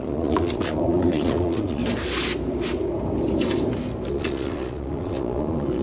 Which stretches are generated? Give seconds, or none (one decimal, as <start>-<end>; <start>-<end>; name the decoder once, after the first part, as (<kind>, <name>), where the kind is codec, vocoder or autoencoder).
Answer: 0.0-1.8 (vocoder, Vocos); 4.1-5.8